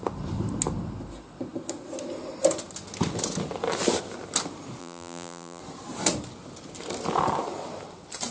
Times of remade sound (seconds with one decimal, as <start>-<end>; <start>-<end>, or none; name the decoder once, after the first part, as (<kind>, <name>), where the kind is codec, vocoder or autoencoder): 4.8-5.6 (vocoder, BigVGAN v2)